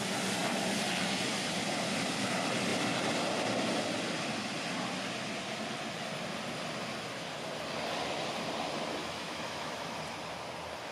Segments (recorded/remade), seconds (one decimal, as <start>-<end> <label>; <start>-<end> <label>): 0.0-9.0 recorded; 9.0-10.0 remade; 10.0-10.9 recorded